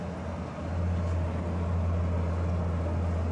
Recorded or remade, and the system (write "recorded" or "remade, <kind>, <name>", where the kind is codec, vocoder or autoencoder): recorded